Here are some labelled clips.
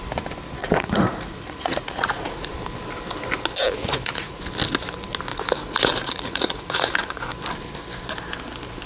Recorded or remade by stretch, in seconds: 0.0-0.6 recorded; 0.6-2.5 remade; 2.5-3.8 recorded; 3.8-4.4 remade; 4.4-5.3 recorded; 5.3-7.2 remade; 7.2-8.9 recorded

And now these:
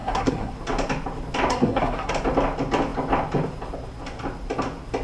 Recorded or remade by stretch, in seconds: 0.0-0.5 remade; 0.5-1.5 recorded; 1.5-2.1 remade; 2.1-5.0 recorded

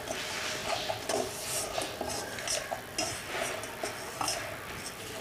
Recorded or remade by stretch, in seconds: 0.0-0.6 remade; 0.6-3.7 recorded; 3.7-5.2 remade

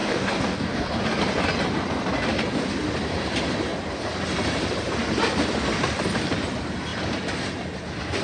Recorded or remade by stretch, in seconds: 0.0-1.0 remade; 1.0-8.2 recorded

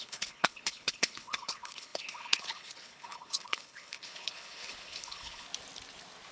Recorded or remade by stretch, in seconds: 0.0-5.5 remade; 5.5-6.3 recorded

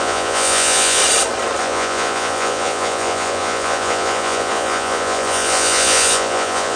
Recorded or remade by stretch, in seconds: 0.0-1.0 remade; 1.0-1.6 recorded; 1.6-6.8 remade

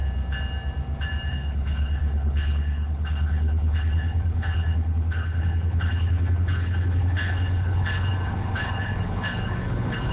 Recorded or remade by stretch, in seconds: 0.0-1.3 recorded; 1.3-10.1 remade